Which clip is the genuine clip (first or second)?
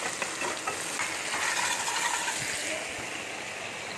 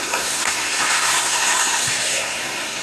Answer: first